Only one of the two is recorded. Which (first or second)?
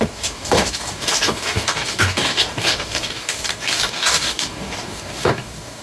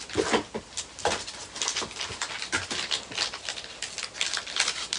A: second